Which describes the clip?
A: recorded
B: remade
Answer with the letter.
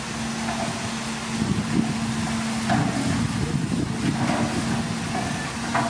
A